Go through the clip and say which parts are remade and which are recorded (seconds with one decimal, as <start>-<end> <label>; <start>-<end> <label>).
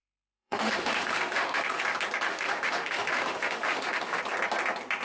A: 0.0-1.8 remade; 1.8-2.3 recorded; 2.3-4.2 remade; 4.2-5.0 recorded